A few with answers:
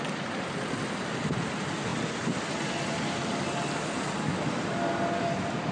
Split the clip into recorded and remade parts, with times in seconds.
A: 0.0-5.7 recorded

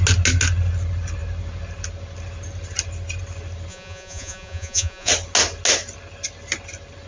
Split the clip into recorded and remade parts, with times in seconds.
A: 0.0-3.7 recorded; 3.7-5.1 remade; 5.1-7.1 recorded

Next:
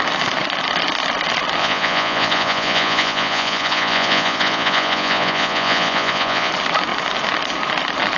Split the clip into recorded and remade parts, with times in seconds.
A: 0.0-1.6 recorded; 1.6-6.5 remade; 6.5-8.2 recorded